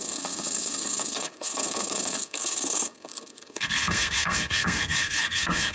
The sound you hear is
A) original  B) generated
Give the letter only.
B